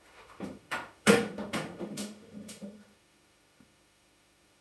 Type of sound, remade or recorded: remade